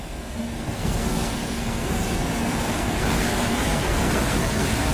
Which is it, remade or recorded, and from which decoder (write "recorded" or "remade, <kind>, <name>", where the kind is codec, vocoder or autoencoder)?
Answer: remade, codec, SNAC